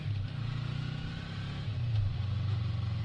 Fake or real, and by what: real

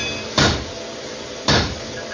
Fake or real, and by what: real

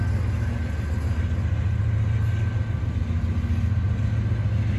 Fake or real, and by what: real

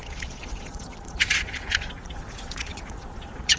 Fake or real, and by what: fake, vocoder, Vocos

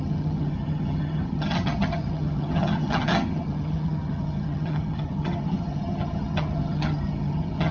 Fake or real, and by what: fake, vocoder, HiFi-GAN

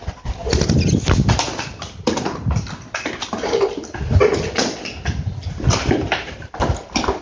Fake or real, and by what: fake, vocoder, BigVGAN v2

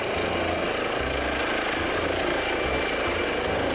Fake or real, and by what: real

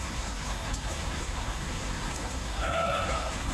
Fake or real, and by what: fake, codec, SNAC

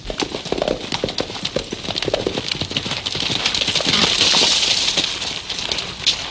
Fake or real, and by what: real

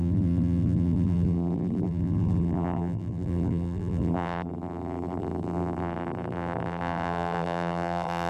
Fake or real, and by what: fake, vocoder, BigVGAN v2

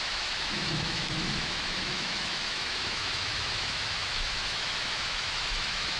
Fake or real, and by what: fake, autoencoder, DAC-VAE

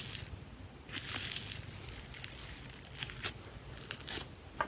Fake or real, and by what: real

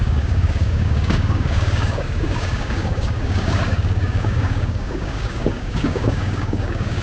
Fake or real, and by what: fake, codec, DAC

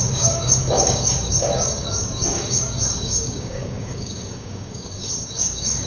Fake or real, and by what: fake, codec, DAC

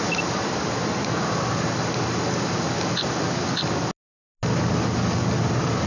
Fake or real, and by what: real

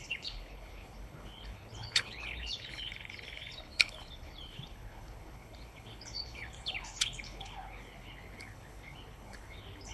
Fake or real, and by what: fake, codec, HILCodec